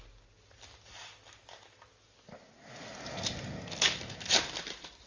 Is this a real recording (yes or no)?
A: yes